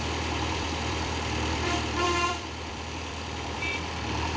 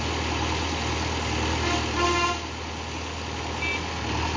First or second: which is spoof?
first